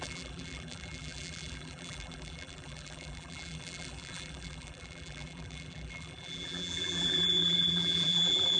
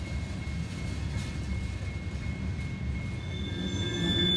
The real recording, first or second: second